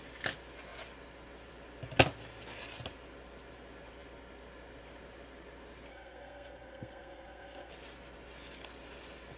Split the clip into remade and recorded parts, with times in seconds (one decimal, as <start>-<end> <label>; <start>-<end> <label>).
0.0-5.9 recorded; 5.9-7.7 remade; 7.7-9.4 recorded